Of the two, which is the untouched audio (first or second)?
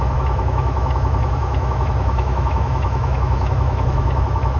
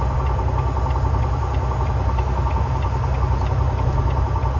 second